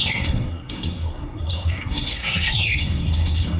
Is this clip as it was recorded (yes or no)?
no